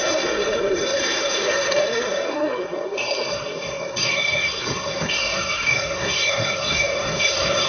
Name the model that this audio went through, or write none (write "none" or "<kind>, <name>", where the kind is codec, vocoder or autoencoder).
codec, SNAC